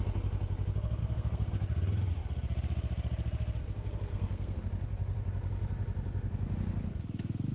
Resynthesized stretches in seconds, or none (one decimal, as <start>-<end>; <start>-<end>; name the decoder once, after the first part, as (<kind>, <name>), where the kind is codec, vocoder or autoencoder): 1.0-1.5 (codec, SNAC); 4.1-4.6